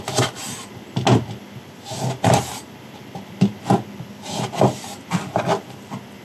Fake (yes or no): no